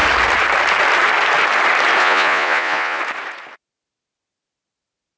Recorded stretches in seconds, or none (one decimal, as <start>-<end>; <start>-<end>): 0.0-2.0; 3.0-5.2